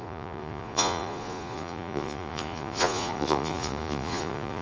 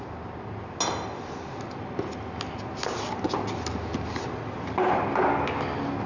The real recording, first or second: second